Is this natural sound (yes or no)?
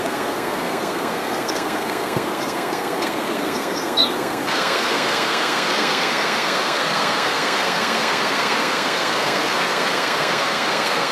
no